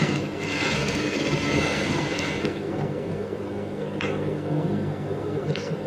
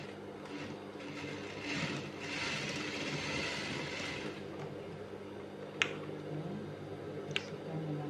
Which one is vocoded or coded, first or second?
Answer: first